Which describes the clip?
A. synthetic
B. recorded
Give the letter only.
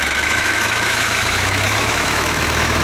A